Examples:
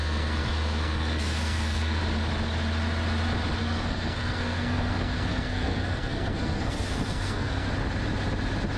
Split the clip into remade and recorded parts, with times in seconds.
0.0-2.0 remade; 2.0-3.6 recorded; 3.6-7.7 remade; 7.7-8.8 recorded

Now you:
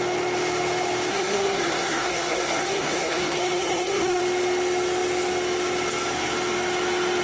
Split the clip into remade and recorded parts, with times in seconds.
0.0-1.1 recorded; 1.1-4.2 remade; 4.2-7.2 recorded

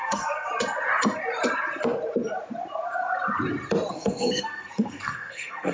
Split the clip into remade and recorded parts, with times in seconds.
0.0-0.5 remade; 0.5-3.9 recorded; 3.9-5.7 remade

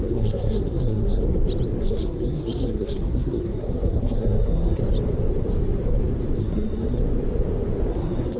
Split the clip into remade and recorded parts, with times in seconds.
0.0-1.2 remade; 1.2-1.8 recorded; 1.8-4.8 remade; 4.8-6.4 recorded; 6.4-7.0 remade; 7.0-7.9 recorded; 7.9-8.4 remade

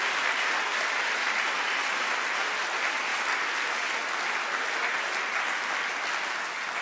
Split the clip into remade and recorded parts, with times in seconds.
0.0-6.8 recorded

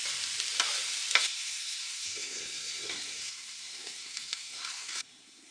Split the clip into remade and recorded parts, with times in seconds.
0.0-1.2 recorded; 1.2-5.5 remade

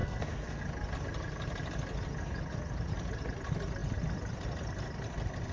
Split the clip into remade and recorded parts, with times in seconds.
0.0-0.6 remade; 0.6-5.5 recorded